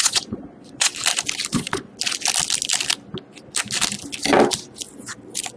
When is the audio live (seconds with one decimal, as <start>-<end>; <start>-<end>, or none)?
0.9-1.5; 1.9-5.6